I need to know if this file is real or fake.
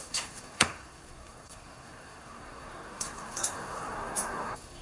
fake